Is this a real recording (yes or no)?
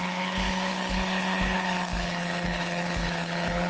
no